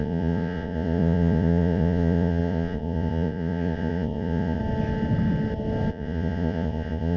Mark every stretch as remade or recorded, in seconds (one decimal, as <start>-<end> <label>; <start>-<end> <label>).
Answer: 0.0-4.6 remade; 4.6-5.9 recorded; 5.9-7.2 remade